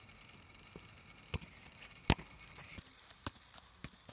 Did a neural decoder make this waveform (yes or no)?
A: no